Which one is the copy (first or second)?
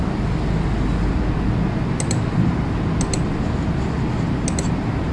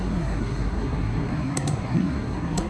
second